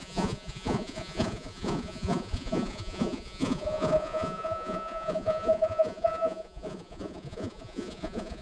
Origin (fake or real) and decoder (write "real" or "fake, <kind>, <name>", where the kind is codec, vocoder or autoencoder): fake, vocoder, Vocos